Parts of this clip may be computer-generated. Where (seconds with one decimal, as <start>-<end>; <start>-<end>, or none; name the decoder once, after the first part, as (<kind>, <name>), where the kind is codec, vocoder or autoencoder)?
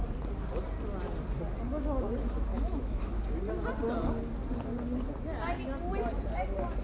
1.7-3.3 (autoencoder, DAC-VAE)